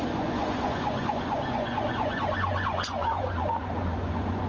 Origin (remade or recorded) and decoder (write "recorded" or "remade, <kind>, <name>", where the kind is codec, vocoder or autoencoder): remade, vocoder, Vocos